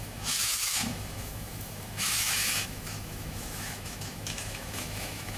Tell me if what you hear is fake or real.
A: fake